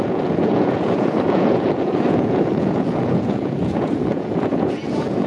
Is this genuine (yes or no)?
no